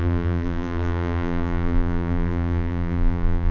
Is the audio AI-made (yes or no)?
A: yes